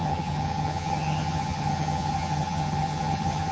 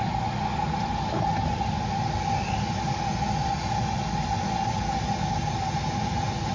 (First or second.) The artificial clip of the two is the first